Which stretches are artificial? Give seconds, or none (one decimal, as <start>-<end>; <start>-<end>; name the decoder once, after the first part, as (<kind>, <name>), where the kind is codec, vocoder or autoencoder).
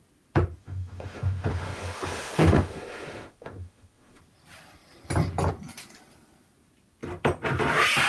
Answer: 0.6-4.2 (autoencoder, DAC-VAE)